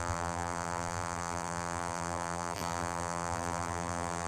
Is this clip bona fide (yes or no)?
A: no